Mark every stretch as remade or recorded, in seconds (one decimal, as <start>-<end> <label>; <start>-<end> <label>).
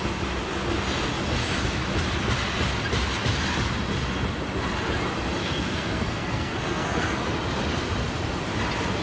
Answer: 0.0-5.4 recorded; 5.4-7.2 remade; 7.2-9.0 recorded